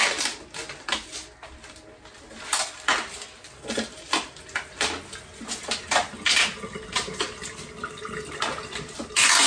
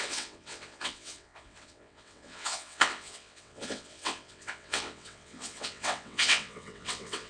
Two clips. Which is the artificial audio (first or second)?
second